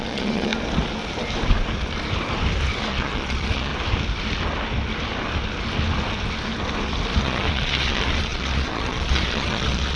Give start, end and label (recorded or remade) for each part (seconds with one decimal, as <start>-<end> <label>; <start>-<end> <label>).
0.0-0.5 remade; 0.5-2.9 recorded; 2.9-3.7 remade; 3.7-7.2 recorded; 7.2-10.0 remade